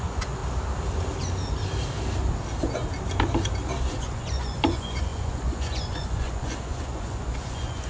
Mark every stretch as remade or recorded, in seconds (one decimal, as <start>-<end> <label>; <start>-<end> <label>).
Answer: 0.0-0.4 remade; 0.4-4.0 recorded; 4.0-7.9 remade